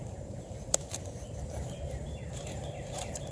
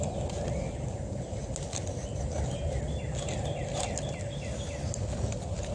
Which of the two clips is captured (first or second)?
second